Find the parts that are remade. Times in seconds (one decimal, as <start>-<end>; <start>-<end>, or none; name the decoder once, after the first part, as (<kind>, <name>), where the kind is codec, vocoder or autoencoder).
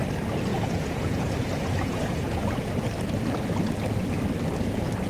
0.5-2.8 (vocoder, Vocos)